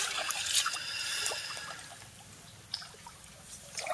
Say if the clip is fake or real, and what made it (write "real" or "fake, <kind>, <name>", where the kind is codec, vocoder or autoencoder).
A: real